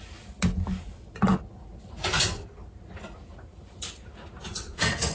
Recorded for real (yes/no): yes